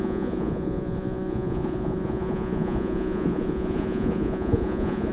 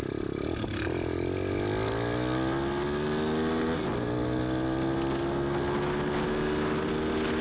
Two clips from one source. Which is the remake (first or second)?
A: first